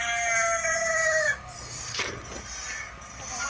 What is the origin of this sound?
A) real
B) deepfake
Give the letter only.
A